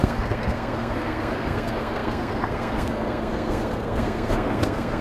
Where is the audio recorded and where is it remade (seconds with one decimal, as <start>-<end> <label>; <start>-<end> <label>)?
0.0-5.0 remade